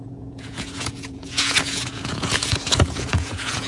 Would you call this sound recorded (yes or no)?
no